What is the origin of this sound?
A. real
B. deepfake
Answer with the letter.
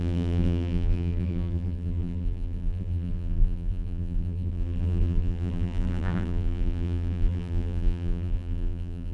B